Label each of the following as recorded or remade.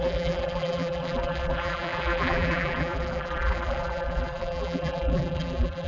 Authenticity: remade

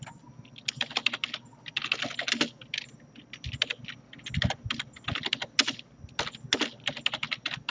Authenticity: recorded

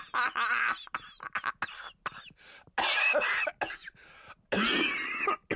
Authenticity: recorded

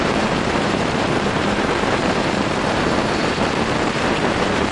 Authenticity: remade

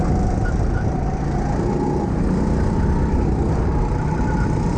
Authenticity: recorded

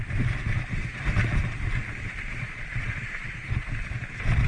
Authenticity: recorded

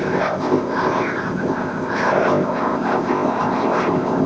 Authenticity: remade